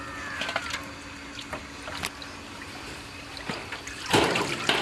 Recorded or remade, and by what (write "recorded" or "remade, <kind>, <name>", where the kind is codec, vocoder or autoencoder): recorded